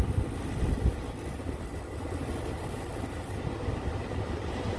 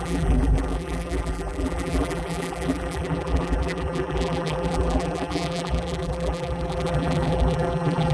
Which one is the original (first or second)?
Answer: first